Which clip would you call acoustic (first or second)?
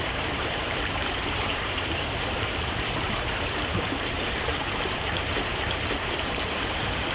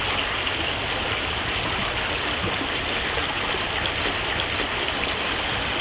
second